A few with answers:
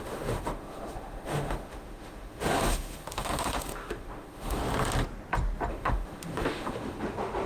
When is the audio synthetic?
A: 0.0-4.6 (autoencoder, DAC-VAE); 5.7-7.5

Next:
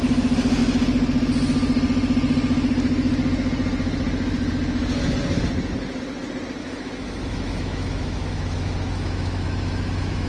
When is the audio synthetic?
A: 6.6-10.3 (autoencoder, DAC-VAE)

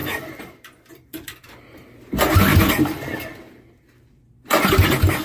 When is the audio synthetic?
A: none

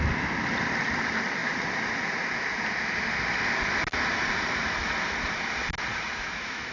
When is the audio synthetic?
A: 5.9-6.7 (autoencoder, DAC-VAE)

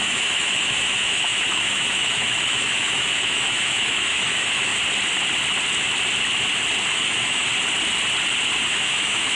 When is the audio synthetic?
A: 0.0-4.7 (autoencoder, DAC-VAE); 6.9-7.5; 8.7-9.4

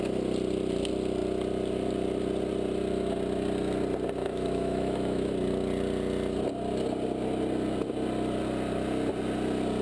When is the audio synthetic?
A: 4.2-5.3 (autoencoder, DAC-VAE)

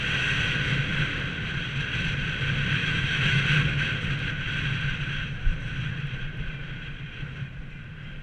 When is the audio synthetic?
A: 2.8-3.4 (autoencoder, DAC-VAE)

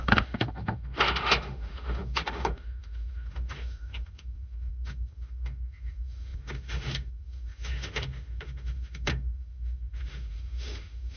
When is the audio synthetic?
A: 0.0-11.2 (autoencoder, DAC-VAE)